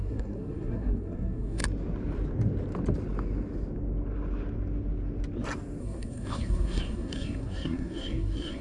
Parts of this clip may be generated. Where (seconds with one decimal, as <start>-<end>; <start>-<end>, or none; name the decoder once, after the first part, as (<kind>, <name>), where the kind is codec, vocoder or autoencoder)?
0.0-1.6 (codec, SNAC); 5.8-8.6